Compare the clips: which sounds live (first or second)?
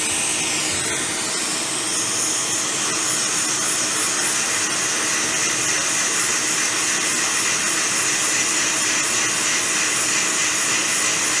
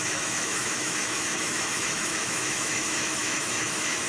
first